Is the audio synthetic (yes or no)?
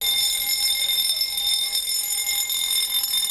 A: no